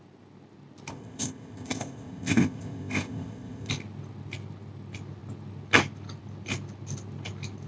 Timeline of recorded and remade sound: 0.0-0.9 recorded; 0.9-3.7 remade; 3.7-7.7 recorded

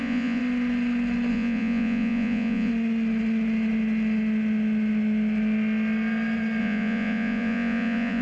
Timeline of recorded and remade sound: 0.0-0.4 remade; 0.4-1.3 recorded; 1.3-2.7 remade; 2.7-6.6 recorded; 6.6-8.2 remade

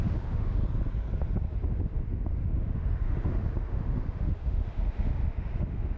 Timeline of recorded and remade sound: 0.0-0.6 remade; 0.6-1.5 recorded; 1.5-6.0 remade

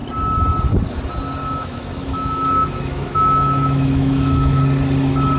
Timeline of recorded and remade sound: 0.0-1.4 recorded; 1.4-4.6 remade; 4.6-5.4 recorded

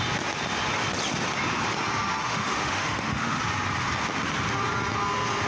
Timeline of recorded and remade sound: 0.0-2.2 recorded; 2.2-3.4 remade; 3.4-5.5 recorded

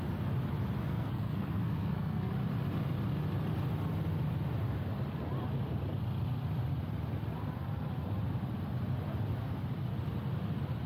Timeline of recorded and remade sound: 0.0-0.8 recorded; 0.8-2.3 remade; 2.3-10.9 recorded

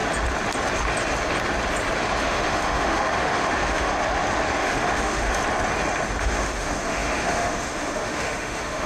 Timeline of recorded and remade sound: 0.0-2.2 recorded; 2.2-3.9 remade; 3.9-4.6 recorded; 4.6-5.4 remade; 5.4-6.2 recorded; 6.2-8.9 remade